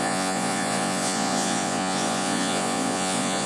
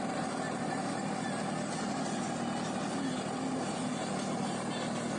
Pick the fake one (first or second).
first